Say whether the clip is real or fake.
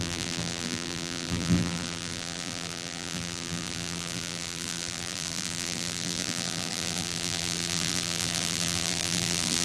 fake